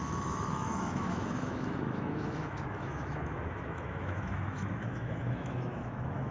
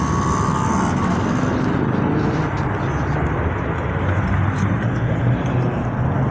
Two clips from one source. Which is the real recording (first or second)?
second